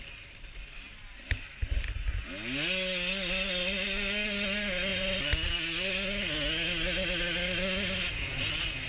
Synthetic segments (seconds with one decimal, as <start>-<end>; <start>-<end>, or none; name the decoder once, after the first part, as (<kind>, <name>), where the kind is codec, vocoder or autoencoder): 4.9-5.5 (vocoder, Vocos)